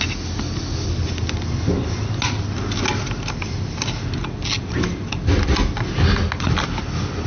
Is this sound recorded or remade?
recorded